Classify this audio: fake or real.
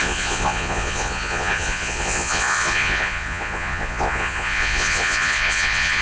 fake